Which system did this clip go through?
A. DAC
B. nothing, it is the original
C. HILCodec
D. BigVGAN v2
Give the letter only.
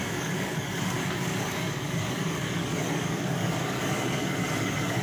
A